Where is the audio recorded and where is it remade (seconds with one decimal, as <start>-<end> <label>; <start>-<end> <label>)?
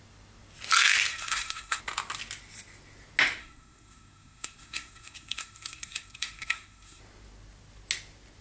0.0-1.1 recorded; 1.1-1.8 remade; 1.8-3.4 recorded; 3.4-7.0 remade; 7.0-8.4 recorded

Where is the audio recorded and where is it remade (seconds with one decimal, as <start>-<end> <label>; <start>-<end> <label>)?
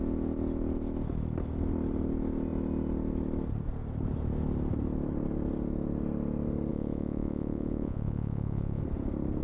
0.0-6.7 recorded; 6.7-8.8 remade; 8.8-9.4 recorded